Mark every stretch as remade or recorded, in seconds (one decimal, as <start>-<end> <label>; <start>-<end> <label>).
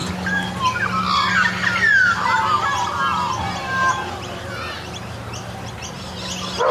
0.0-6.7 recorded